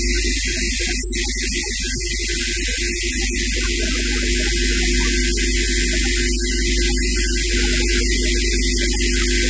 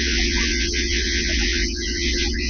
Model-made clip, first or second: second